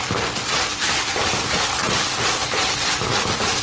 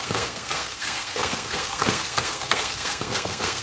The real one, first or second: first